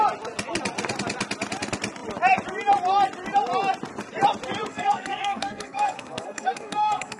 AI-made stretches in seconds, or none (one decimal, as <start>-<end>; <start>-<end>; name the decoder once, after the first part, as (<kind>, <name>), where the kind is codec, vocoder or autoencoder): 4.7-7.2 (codec, SNAC)